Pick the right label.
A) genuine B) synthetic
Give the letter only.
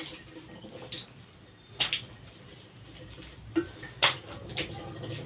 A